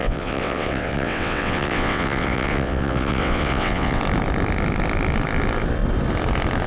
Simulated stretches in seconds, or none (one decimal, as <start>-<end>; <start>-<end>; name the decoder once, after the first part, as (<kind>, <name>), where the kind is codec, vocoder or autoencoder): 0.0-4.0 (vocoder, WaveNeXt)